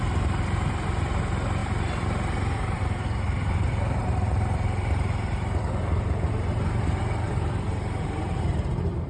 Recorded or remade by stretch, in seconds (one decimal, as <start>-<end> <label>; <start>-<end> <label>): 0.0-9.1 remade